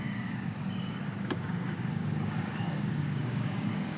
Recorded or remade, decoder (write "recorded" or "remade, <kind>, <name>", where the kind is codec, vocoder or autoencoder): remade, codec, DAC